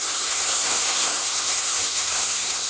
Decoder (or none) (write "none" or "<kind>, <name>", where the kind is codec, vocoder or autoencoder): codec, SNAC